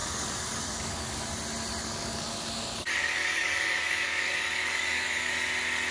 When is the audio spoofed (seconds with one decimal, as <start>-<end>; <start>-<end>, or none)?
0.0-1.3; 1.8-5.3

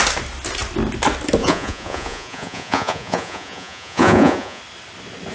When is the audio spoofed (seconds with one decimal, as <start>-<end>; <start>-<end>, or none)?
1.4-4.6

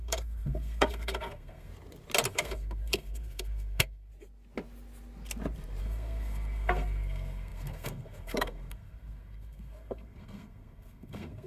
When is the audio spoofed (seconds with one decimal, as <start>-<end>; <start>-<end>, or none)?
0.0-1.7; 2.3-4.1; 5.8-11.5